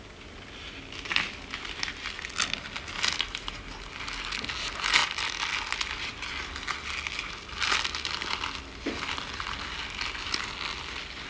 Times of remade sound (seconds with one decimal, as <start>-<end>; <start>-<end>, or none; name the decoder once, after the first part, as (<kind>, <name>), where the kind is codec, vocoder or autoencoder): none